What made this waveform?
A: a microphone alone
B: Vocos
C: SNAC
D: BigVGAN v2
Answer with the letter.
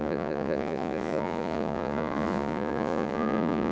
B